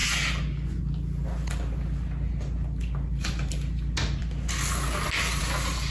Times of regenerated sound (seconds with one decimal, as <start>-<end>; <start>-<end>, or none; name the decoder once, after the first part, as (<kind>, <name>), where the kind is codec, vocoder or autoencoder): none